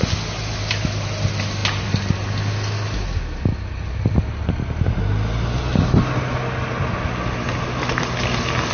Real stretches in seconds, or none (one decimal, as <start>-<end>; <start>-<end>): 0.0-8.7